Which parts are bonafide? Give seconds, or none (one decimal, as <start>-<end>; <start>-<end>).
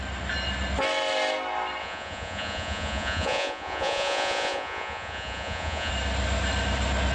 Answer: 0.0-1.8; 5.9-7.1